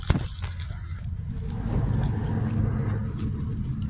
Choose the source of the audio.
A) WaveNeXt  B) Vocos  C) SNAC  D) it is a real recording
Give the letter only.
D